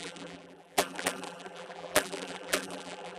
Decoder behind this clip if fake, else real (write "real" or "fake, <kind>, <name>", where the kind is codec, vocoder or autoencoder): fake, vocoder, BigVGAN v2